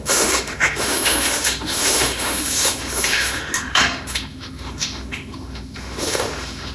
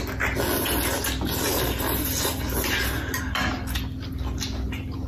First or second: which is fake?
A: first